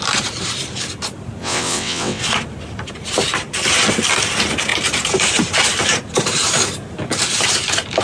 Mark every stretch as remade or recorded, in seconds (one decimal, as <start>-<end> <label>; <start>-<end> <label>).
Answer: 0.0-1.4 recorded; 1.4-2.2 remade; 2.2-8.0 recorded